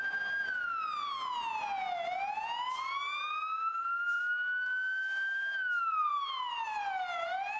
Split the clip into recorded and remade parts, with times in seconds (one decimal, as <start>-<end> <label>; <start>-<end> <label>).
0.0-3.7 recorded; 3.7-4.2 remade; 4.2-6.1 recorded; 6.1-7.6 remade